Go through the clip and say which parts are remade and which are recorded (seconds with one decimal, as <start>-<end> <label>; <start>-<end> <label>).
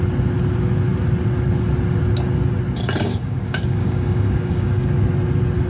0.0-3.1 recorded; 3.1-4.9 remade; 4.9-5.7 recorded